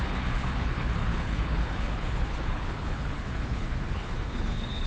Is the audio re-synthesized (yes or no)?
yes